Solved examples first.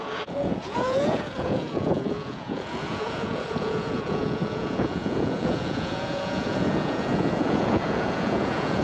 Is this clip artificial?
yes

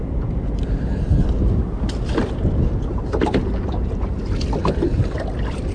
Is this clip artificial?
no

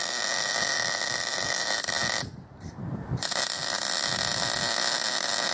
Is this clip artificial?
no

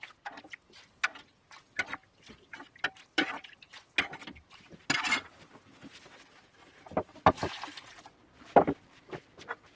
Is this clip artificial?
no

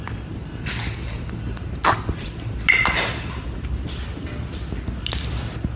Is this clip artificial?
no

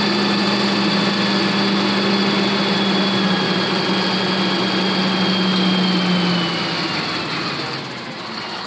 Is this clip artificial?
no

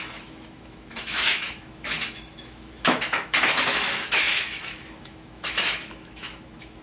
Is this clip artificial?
yes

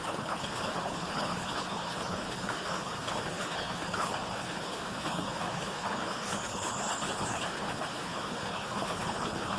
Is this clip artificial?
yes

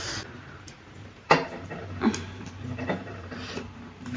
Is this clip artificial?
yes